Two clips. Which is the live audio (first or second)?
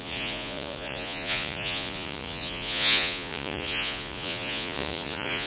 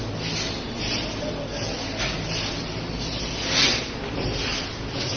second